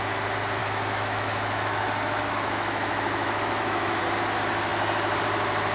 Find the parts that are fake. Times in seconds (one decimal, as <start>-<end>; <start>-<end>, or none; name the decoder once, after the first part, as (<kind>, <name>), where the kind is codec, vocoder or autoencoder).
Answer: 0.6-4.0 (autoencoder, DAC-VAE)